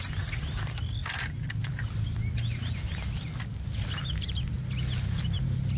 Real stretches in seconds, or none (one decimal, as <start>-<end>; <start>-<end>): 0.0-5.8